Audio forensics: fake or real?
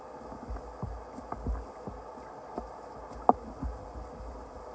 real